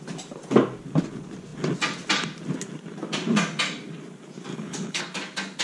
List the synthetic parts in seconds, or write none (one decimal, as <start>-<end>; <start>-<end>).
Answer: 4.5-5.0